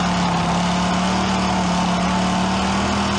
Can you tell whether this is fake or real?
real